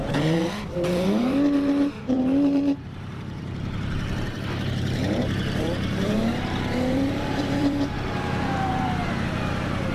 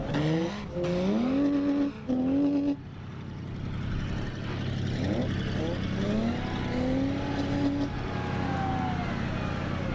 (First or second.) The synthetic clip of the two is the first